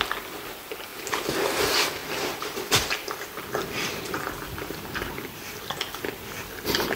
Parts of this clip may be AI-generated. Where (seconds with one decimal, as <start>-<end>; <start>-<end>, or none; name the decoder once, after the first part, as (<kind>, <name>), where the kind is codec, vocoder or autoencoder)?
0.9-1.5 (vocoder, BigVGAN v2); 2.0-5.7